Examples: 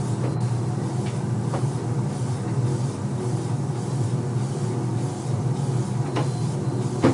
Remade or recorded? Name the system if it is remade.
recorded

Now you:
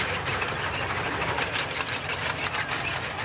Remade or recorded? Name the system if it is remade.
recorded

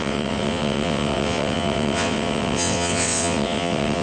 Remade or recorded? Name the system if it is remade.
remade, vocoder, WaveNeXt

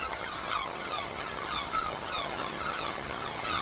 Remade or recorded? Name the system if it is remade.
remade, vocoder, HiFi-GAN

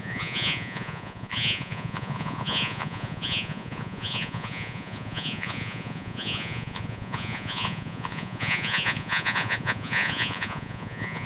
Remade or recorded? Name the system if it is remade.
remade, vocoder, Vocos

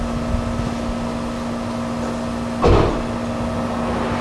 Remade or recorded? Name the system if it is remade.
recorded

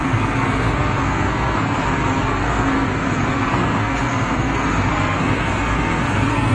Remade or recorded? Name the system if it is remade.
remade, codec, SNAC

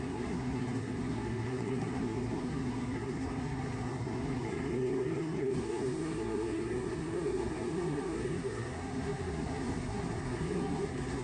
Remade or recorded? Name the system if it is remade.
remade, codec, SNAC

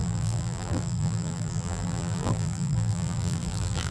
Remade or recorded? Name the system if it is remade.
remade, vocoder, BigVGAN v2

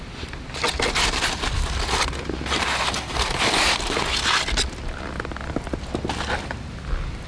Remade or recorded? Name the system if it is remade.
recorded